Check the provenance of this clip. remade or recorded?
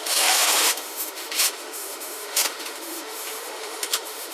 remade